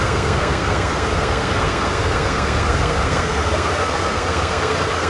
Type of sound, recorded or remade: remade